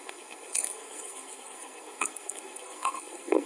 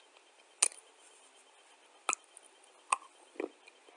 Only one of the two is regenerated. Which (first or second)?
first